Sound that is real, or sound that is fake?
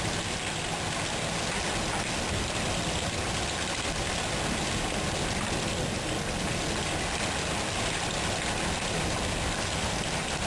real